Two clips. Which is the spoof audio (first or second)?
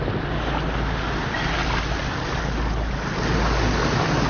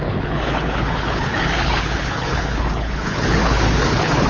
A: second